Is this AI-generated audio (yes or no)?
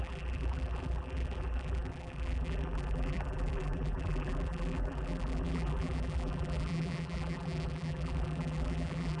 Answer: yes